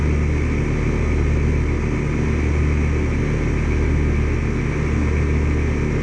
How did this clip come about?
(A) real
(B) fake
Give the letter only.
A